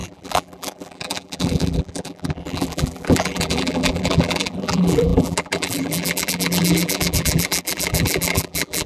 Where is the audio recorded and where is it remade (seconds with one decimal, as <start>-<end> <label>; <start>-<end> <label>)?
0.0-8.9 remade